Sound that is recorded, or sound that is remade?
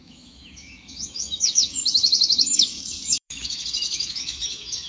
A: remade